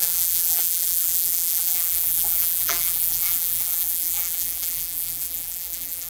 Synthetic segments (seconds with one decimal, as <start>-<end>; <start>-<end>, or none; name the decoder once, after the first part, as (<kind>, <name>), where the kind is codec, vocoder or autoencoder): 0.0-6.1 (vocoder, BigVGAN v2)